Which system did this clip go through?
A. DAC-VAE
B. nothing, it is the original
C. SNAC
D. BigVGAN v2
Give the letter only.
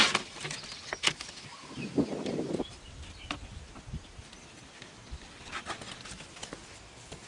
B